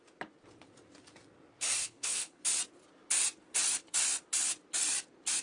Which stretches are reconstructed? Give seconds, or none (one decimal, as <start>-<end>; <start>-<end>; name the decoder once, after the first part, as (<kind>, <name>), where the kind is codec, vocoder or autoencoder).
1.8-2.4 (codec, HILCodec)

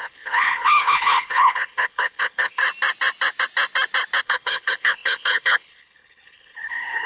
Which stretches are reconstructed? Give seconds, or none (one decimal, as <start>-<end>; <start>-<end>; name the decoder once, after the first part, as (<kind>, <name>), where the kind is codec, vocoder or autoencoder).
0.0-2.6 (codec, HILCodec); 4.2-7.1

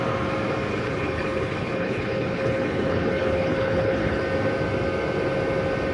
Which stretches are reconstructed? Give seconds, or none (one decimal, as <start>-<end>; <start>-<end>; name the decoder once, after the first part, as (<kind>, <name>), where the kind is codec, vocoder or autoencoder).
0.7-4.2 (codec, HILCodec)

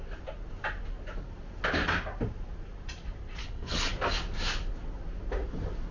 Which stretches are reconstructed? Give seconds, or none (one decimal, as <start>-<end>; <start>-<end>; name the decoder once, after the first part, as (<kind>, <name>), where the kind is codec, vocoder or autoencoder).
3.4-3.9 (codec, HILCodec)